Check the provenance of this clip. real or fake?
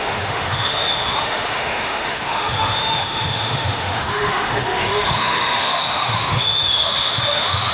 fake